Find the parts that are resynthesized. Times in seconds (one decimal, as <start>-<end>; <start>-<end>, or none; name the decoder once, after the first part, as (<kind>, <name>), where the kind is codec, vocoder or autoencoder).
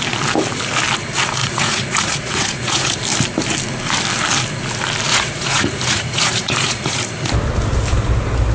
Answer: 1.4-3.0 (vocoder, Vocos); 5.1-7.0